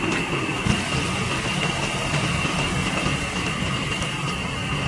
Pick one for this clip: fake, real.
real